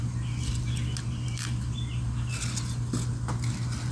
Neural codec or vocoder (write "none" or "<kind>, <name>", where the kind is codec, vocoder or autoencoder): none